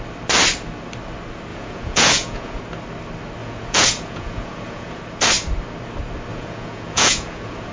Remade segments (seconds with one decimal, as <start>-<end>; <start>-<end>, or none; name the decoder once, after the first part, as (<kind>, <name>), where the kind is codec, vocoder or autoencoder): 1.5-2.6 (vocoder, Vocos); 3.4-5.0; 6.3-7.7